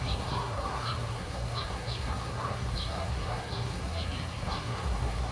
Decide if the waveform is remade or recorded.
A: remade